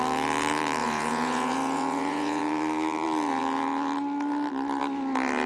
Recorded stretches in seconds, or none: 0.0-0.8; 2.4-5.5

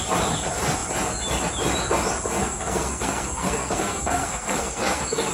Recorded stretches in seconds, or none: 0.0-2.4

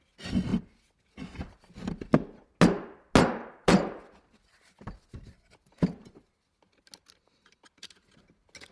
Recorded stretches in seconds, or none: 0.0-8.7

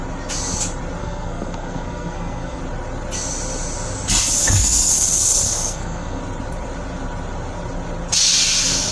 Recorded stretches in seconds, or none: 0.0-1.0; 2.6-4.4; 6.2-8.9